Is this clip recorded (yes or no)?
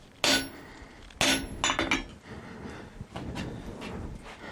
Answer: yes